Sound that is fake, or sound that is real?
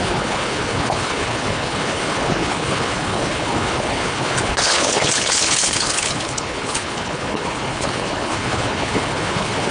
fake